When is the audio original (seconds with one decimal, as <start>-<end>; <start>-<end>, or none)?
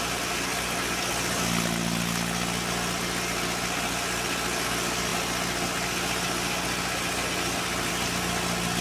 0.0-8.8